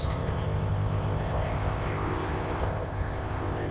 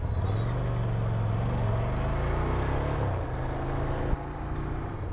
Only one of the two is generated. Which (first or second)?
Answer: first